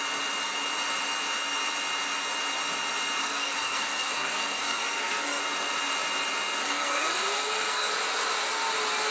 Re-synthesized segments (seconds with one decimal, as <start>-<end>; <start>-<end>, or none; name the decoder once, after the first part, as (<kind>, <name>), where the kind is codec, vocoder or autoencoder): 3.2-5.4 (codec, SNAC); 6.6-7.9